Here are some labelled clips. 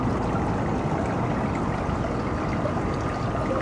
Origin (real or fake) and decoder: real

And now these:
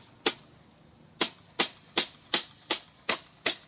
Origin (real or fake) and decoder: real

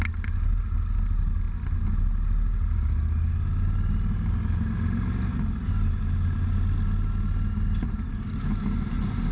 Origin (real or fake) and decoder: real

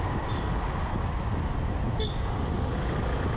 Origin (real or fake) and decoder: real